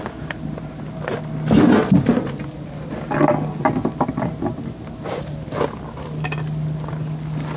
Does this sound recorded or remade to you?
recorded